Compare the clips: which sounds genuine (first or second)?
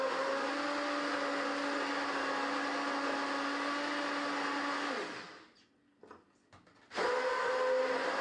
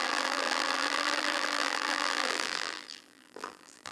first